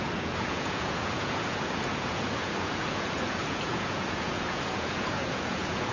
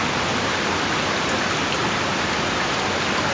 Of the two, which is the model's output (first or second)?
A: first